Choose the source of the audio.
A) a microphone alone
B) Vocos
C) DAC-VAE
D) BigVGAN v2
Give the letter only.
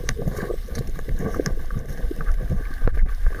D